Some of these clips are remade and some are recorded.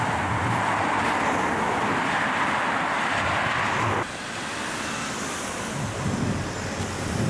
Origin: recorded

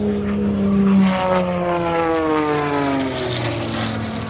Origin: recorded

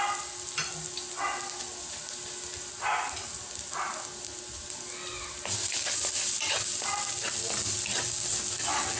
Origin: recorded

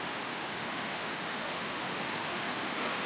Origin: remade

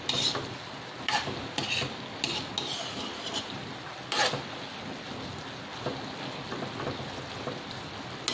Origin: recorded